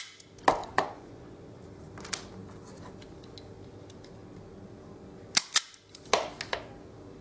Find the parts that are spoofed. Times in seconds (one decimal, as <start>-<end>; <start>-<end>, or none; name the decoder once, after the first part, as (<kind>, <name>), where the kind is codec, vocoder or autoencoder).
0.6-1.6 (vocoder, Vocos)